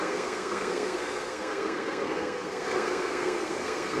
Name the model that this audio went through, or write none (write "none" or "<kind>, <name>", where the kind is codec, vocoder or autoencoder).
codec, SNAC